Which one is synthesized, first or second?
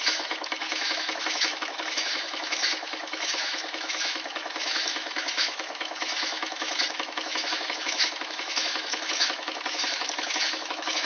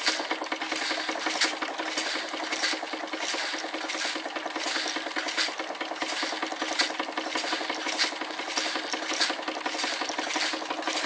first